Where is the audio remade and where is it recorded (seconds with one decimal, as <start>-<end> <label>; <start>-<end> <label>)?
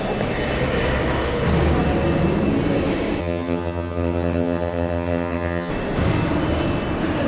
0.0-3.2 recorded; 3.2-5.7 remade; 5.7-7.3 recorded